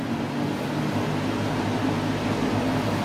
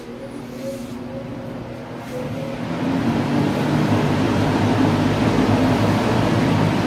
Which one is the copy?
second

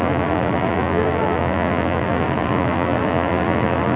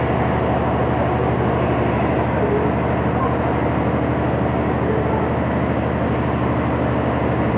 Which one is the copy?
first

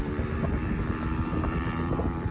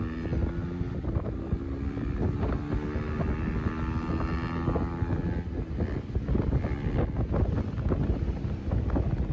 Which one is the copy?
first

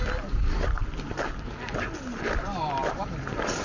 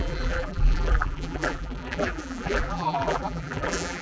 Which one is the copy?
second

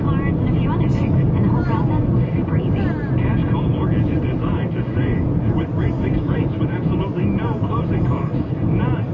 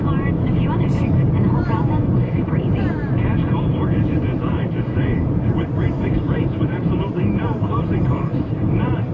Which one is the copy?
second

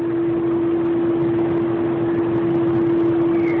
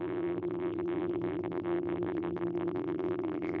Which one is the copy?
second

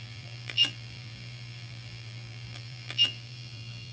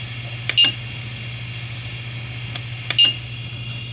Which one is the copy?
first